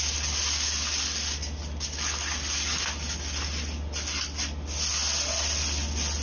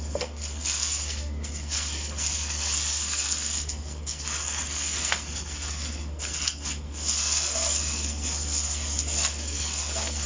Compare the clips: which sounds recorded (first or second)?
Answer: first